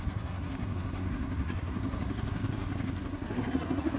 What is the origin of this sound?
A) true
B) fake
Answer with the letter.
B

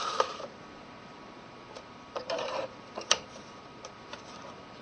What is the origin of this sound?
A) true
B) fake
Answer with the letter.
B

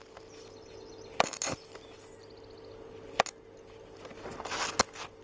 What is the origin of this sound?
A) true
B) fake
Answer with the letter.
A